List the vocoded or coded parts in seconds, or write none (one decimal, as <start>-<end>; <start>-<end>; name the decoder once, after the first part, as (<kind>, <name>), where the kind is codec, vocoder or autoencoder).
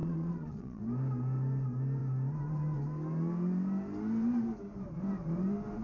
0.0-0.8 (vocoder, Vocos)